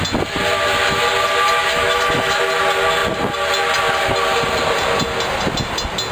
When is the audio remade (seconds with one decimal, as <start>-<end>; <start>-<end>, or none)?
1.7-2.4

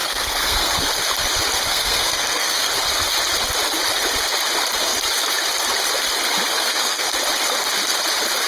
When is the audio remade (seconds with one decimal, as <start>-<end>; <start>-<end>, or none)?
0.0-0.7; 1.7-2.7; 6.5-7.1

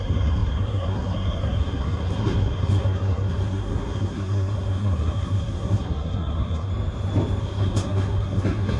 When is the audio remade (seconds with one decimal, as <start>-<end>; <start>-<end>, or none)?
0.0-6.7; 7.4-8.8

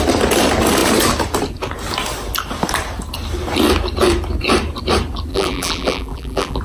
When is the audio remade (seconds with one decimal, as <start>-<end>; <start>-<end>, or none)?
5.3-6.6

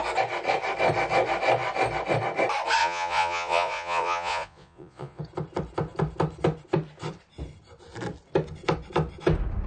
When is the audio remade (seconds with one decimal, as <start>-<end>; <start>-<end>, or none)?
2.8-5.2

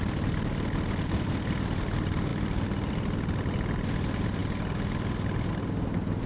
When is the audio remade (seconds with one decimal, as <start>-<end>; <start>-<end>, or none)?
none

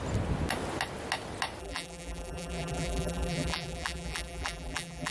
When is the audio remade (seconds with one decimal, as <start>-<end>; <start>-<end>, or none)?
1.6-5.1

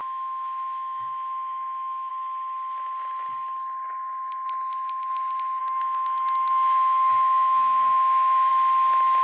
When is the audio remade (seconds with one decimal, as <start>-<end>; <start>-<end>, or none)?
0.0-2.1; 5.6-8.5